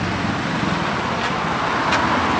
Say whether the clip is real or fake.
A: real